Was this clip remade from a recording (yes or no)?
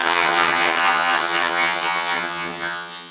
yes